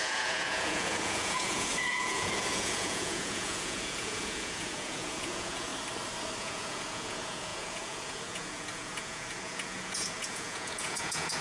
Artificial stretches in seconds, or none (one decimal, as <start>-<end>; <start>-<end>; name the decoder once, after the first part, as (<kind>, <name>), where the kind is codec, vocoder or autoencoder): 0.0-5.7 (vocoder, Vocos); 6.4-11.4